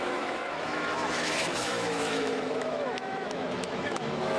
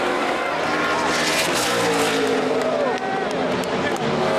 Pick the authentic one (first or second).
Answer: second